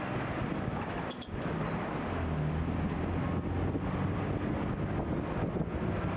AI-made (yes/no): no